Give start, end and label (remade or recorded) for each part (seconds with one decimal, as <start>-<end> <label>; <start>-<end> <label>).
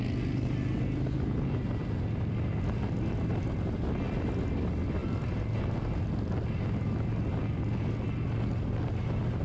0.0-9.4 recorded